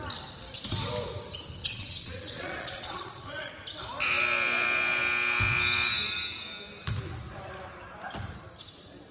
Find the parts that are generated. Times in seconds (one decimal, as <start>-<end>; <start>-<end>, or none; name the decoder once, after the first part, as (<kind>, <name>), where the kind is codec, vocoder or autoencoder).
1.6-3.5 (vocoder, Vocos)